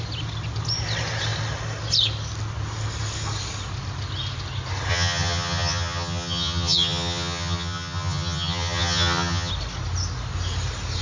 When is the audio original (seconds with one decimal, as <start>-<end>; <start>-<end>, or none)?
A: 0.0-4.9; 9.5-11.0